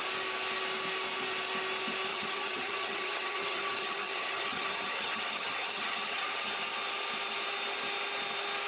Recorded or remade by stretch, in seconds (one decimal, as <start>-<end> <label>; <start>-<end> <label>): 0.0-2.1 recorded; 2.1-6.5 remade; 6.5-8.7 recorded